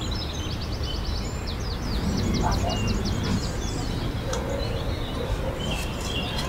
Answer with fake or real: real